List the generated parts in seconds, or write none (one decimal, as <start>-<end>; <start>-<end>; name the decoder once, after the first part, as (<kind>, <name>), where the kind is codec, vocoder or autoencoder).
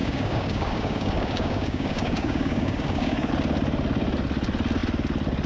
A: 0.0-3.3 (codec, DAC)